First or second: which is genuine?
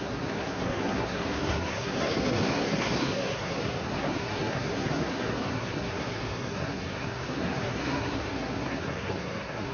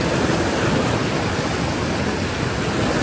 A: second